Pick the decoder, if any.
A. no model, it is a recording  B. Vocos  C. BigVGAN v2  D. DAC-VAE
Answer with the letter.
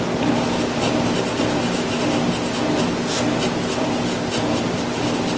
A